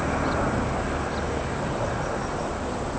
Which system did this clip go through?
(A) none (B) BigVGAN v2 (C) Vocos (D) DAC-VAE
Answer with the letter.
A